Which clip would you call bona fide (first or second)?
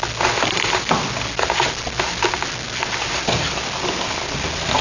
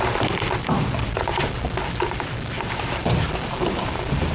first